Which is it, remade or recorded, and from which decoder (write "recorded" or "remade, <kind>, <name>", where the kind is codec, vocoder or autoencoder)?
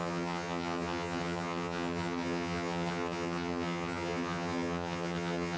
remade, vocoder, HiFi-GAN